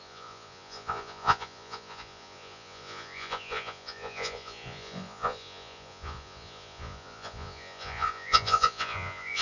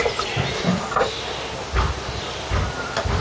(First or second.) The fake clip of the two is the first